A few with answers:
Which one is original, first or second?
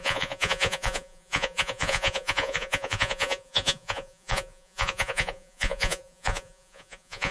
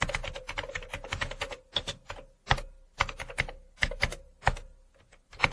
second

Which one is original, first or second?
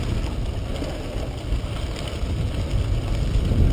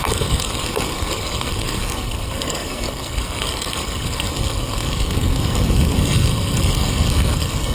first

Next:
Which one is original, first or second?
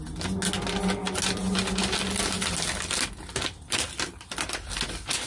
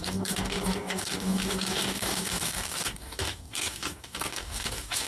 first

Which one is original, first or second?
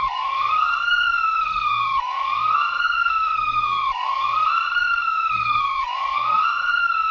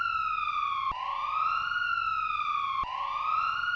second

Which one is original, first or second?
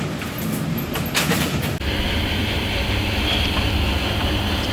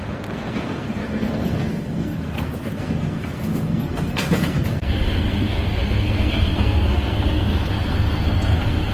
first